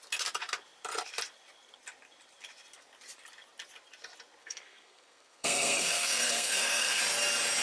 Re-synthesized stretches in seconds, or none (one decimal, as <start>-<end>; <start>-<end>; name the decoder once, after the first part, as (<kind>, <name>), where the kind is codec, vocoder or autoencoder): 4.4-7.0 (codec, SNAC)